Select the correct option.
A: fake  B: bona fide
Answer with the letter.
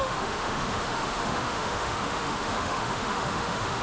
A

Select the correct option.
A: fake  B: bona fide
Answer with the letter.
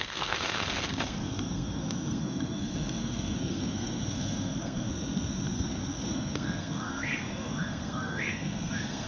A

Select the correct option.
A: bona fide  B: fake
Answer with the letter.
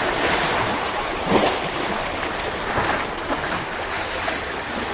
A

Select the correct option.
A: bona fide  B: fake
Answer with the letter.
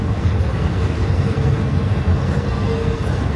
B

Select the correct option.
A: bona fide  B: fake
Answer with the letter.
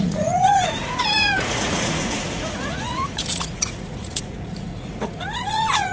B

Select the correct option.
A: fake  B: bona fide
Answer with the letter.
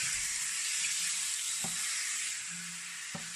B